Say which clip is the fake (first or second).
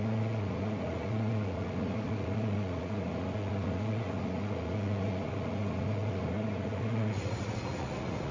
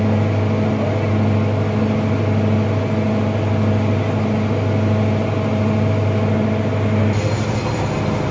first